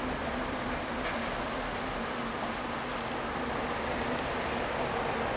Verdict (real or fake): real